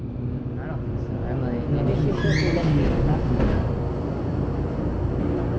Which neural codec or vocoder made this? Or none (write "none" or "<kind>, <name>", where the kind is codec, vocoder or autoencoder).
none